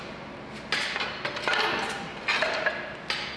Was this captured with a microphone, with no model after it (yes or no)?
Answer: yes